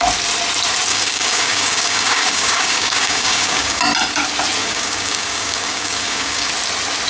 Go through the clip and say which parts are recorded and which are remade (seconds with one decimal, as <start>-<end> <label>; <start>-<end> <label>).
0.0-0.9 recorded; 0.9-3.8 remade; 3.8-4.6 recorded; 4.6-6.5 remade; 6.5-7.1 recorded